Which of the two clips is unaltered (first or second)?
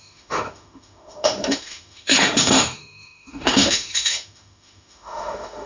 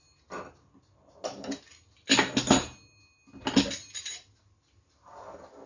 second